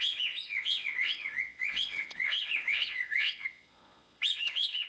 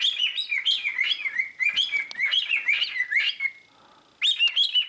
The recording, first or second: second